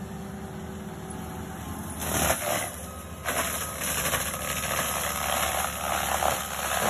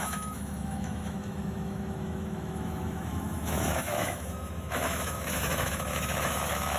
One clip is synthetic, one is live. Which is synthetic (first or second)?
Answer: second